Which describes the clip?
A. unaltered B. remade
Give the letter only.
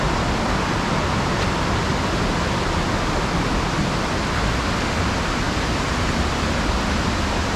A